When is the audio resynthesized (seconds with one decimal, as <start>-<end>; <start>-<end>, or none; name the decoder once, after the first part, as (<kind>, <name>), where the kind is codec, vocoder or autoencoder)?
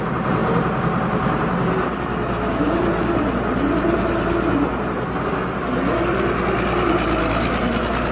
none